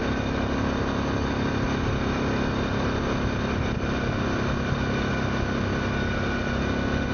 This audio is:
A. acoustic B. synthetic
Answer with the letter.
A